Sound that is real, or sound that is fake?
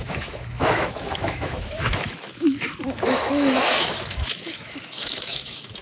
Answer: fake